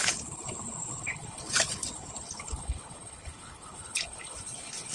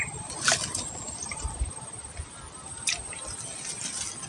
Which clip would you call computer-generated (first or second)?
first